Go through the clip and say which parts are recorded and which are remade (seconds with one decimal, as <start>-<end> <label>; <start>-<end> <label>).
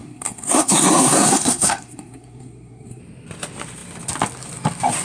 0.0-3.0 remade; 3.0-5.0 recorded